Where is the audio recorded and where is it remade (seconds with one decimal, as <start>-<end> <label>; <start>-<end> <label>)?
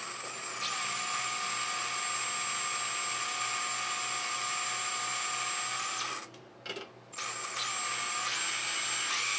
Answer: 0.0-9.4 recorded